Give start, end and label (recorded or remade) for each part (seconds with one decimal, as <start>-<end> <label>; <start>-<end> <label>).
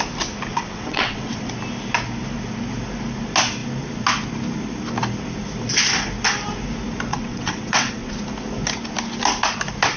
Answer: 0.0-0.5 recorded; 0.5-1.5 remade; 1.5-7.1 recorded; 7.1-8.1 remade; 8.1-10.0 recorded